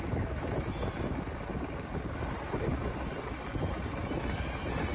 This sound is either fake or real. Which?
real